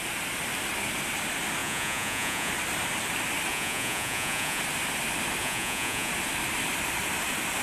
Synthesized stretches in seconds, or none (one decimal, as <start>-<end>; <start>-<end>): 1.6-2.5; 3.5-4.6; 5.4-6.1